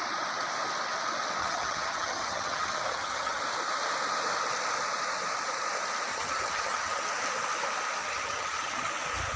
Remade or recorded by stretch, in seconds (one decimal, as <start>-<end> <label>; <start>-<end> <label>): 0.0-1.4 recorded; 1.4-3.4 remade; 3.4-6.1 recorded; 6.1-7.0 remade; 7.0-8.0 recorded; 8.0-8.9 remade; 8.9-9.4 recorded